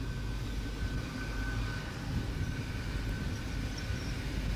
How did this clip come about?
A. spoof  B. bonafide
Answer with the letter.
B